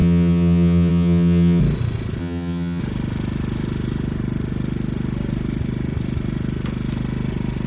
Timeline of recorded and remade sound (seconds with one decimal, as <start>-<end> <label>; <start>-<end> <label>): 0.0-1.6 remade; 1.6-2.2 recorded; 2.2-2.8 remade; 2.8-7.7 recorded